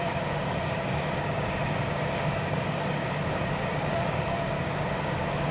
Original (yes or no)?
no